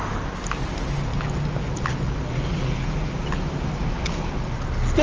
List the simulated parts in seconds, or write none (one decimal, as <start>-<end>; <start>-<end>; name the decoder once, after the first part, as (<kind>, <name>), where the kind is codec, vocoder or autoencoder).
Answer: none